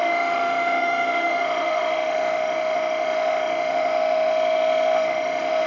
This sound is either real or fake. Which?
fake